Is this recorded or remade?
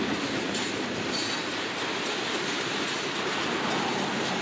recorded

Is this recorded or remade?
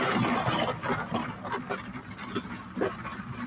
recorded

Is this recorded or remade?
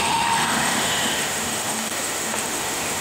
remade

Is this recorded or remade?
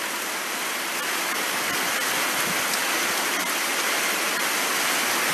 recorded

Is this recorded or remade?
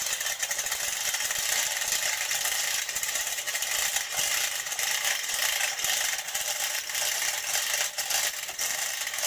recorded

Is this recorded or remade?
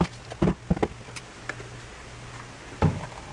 recorded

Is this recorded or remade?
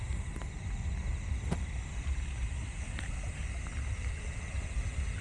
recorded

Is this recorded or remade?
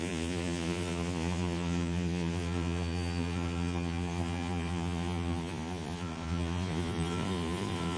remade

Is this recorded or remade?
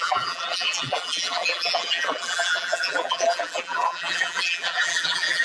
remade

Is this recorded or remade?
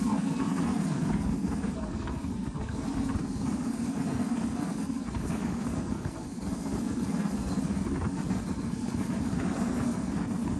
remade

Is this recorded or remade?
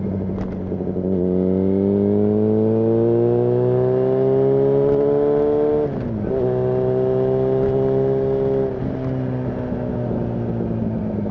recorded